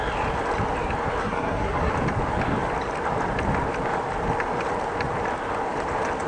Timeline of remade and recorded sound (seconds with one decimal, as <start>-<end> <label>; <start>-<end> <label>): 0.0-1.2 recorded; 1.2-1.9 remade; 1.9-6.3 recorded